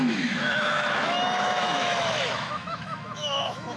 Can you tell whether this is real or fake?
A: fake